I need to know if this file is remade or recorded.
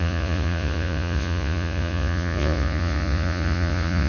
remade